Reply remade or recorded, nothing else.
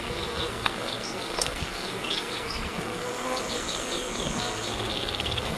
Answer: remade